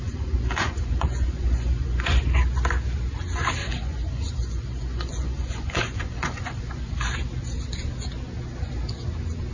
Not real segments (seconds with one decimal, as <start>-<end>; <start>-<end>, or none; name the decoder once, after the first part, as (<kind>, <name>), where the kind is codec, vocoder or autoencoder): 0.0-2.2 (vocoder, Vocos); 3.6-6.9